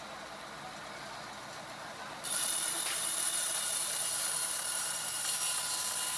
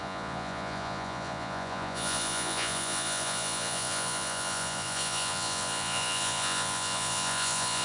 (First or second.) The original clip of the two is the first